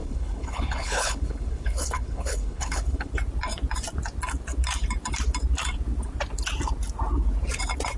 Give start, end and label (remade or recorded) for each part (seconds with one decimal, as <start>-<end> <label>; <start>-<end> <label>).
0.0-3.1 remade; 3.1-8.0 recorded